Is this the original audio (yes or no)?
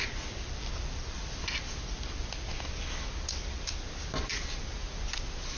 yes